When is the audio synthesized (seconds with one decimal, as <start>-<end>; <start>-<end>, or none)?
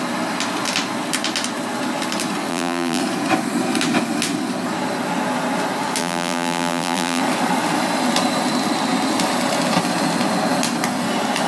2.5-3.0; 6.0-7.2